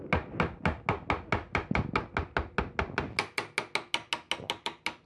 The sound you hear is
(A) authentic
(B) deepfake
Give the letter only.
A